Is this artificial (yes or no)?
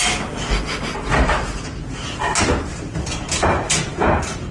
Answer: no